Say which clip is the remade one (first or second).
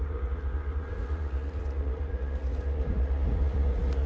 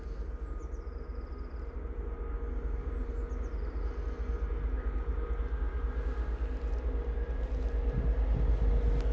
first